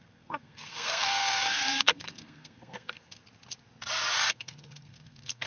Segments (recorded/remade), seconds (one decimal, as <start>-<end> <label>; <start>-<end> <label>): 0.0-3.2 remade; 3.2-4.3 recorded; 4.3-5.5 remade